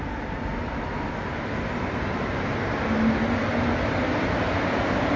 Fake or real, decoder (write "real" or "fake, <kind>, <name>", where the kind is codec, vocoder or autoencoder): real